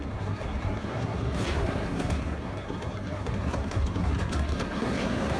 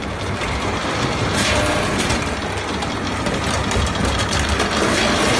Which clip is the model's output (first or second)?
first